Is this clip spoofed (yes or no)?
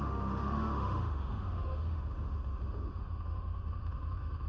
yes